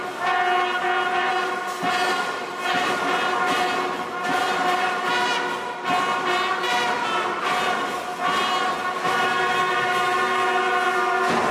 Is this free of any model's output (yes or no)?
yes